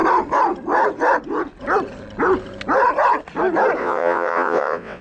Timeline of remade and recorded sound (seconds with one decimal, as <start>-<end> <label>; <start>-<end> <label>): 0.0-3.8 recorded; 3.8-5.0 remade